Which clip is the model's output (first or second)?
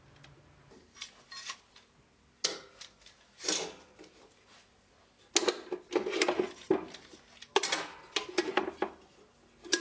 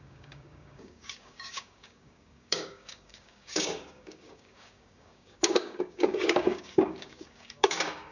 second